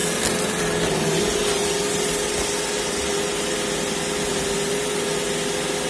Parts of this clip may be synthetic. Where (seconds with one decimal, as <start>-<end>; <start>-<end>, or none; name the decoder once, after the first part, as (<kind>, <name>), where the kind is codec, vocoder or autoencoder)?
none